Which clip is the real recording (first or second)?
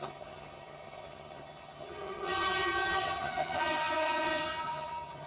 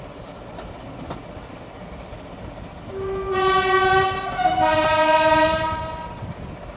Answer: second